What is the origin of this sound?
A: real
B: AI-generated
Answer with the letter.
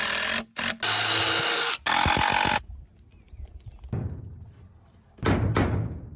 A